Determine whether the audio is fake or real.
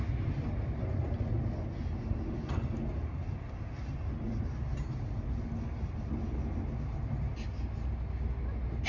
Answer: real